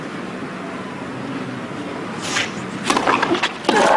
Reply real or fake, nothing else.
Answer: real